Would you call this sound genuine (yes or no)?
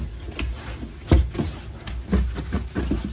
yes